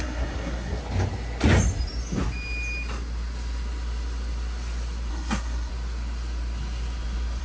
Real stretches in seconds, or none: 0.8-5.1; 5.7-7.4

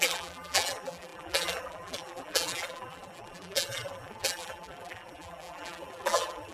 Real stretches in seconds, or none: none

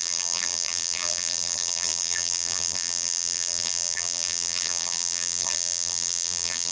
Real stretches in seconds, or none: none

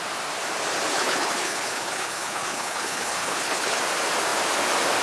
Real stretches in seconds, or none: 0.0-0.9; 3.8-5.0

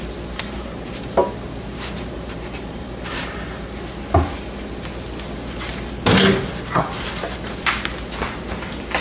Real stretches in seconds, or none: 0.0-9.0

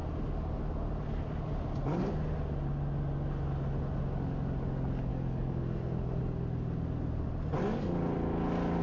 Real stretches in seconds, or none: 0.0-5.1; 6.2-8.8

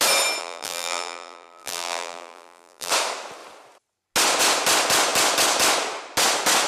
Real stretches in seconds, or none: 0.0-0.4; 2.9-6.7